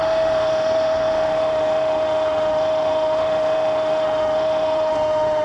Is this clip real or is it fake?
fake